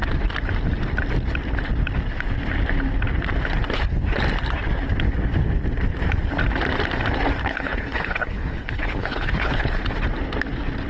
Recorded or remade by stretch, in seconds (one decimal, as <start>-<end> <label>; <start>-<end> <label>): 0.0-7.4 recorded; 7.4-9.8 remade; 9.8-10.9 recorded